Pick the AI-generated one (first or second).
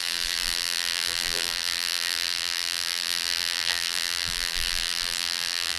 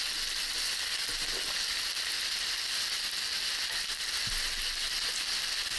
first